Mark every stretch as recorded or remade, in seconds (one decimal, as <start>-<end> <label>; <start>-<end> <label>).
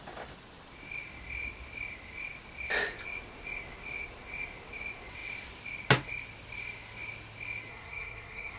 0.0-7.7 recorded; 7.7-8.6 remade